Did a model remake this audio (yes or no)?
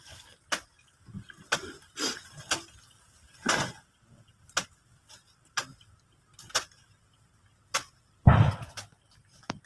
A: no